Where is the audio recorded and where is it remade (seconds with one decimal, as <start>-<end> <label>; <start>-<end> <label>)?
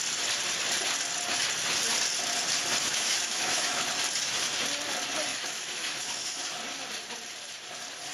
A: 0.0-2.8 recorded; 2.8-3.8 remade; 3.8-5.3 recorded; 5.3-6.5 remade; 6.5-8.1 recorded